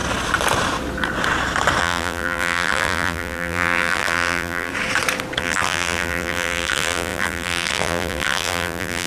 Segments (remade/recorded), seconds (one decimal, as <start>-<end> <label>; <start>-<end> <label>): 0.0-1.8 recorded; 1.8-4.7 remade; 4.7-5.4 recorded; 5.4-9.1 remade